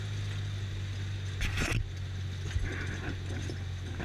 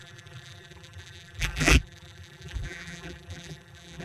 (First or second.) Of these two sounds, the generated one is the second